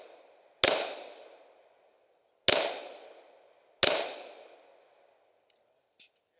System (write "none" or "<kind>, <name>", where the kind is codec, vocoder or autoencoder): none